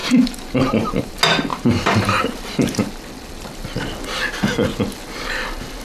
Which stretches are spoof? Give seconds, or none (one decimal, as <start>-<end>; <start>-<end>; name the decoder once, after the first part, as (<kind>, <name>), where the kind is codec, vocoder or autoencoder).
0.0-1.1 (vocoder, BigVGAN v2); 1.5-2.9